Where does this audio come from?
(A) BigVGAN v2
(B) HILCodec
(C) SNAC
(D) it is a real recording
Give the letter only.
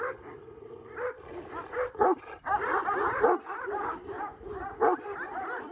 A